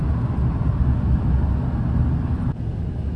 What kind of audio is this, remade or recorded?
recorded